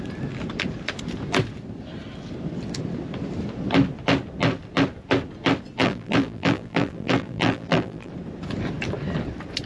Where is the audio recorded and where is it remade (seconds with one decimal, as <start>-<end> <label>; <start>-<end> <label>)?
0.0-5.8 recorded; 5.8-8.1 remade; 8.1-9.7 recorded